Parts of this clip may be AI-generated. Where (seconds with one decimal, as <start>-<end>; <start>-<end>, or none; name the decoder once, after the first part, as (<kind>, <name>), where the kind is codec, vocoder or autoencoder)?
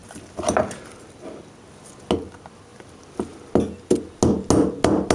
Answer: none